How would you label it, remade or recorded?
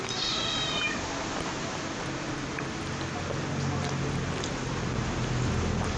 recorded